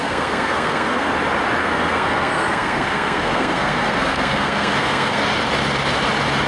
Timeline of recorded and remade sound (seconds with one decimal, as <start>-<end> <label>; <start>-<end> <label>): 0.0-1.1 remade; 1.1-1.6 recorded; 1.6-5.2 remade; 5.2-6.5 recorded